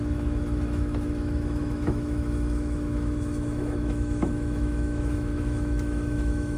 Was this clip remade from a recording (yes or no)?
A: yes